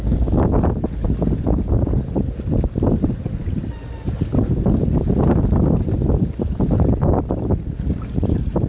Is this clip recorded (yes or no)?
yes